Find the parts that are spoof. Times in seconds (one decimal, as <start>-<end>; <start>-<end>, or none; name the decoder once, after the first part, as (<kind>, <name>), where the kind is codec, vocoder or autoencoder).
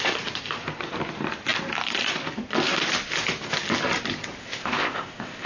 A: 4.4-5.5 (codec, ZipCodec)